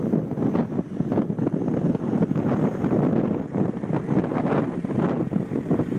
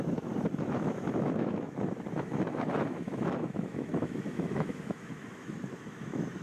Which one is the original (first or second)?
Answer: first